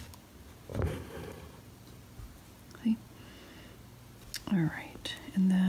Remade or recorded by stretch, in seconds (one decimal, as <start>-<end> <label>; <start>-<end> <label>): 0.0-0.7 recorded; 0.7-2.4 remade; 2.4-5.7 recorded